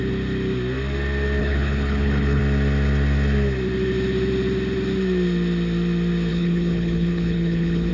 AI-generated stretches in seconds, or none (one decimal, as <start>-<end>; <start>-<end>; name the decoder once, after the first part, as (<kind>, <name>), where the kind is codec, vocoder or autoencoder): 1.4-2.4 (codec, HILCodec); 6.3-7.9